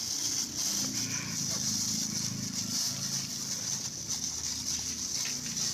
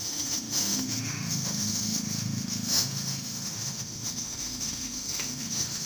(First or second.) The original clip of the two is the first